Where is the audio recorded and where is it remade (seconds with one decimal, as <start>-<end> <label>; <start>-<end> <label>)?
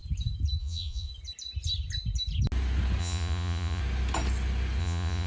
0.0-0.6 recorded; 0.6-1.1 remade; 1.1-3.0 recorded; 3.0-3.8 remade; 3.8-4.8 recorded; 4.8-5.3 remade